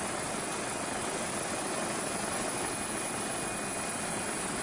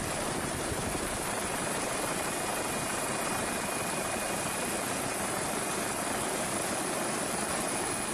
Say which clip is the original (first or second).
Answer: first